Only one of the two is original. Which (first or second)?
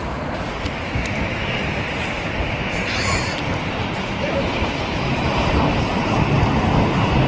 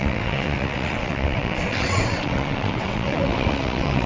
first